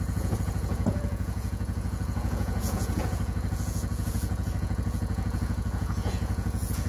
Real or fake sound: fake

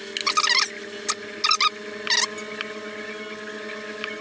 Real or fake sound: real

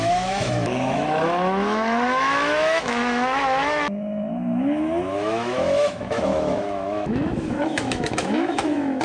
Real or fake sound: fake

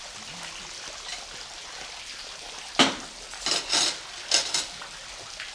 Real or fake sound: real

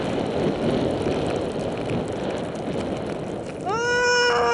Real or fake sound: real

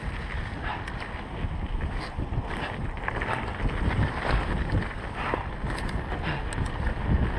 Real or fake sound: real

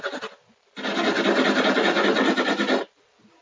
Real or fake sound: real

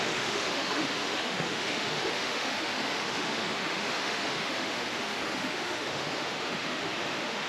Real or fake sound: fake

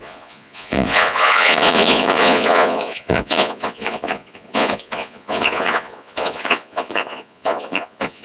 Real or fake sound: fake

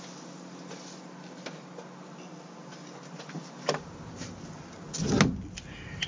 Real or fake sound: real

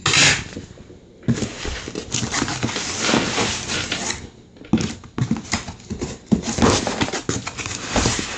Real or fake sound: real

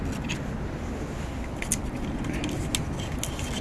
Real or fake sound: real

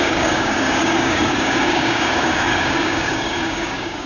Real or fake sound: fake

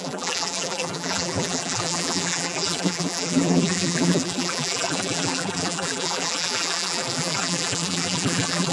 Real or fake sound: fake